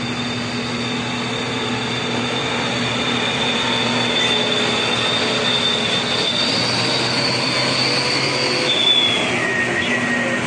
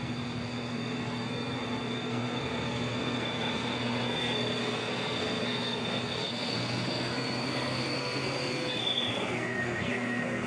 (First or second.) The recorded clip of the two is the first